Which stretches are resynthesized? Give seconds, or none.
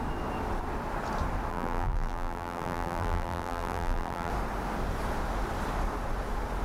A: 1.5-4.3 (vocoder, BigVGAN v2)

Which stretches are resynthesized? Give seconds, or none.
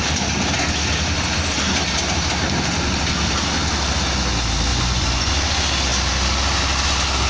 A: 4.7-5.3 (vocoder, Vocos)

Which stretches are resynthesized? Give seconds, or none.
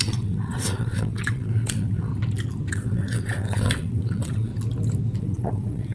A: 0.0-2.1 (vocoder, WaveNeXt); 2.7-4.5; 5.2-5.9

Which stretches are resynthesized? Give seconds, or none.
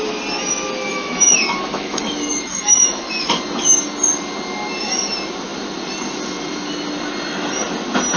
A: 0.9-3.3 (autoencoder, DAC-VAE)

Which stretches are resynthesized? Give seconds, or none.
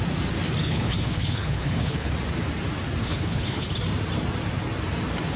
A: 0.6-2.1 (codec, HILCodec); 3.0-3.7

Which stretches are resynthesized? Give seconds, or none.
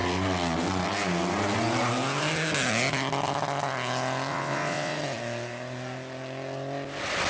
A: 4.3-5.0 (vocoder, WaveNeXt)